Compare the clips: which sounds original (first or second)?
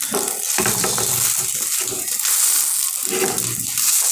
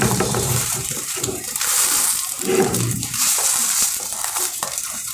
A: first